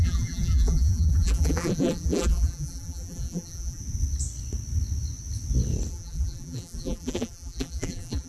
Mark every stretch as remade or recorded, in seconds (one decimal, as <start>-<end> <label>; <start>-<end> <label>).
0.0-3.8 remade; 3.8-5.9 recorded; 5.9-8.3 remade